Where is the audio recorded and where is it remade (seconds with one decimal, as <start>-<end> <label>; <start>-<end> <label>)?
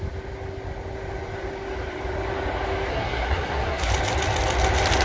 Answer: 0.0-2.9 recorded; 2.9-3.9 remade; 3.9-5.0 recorded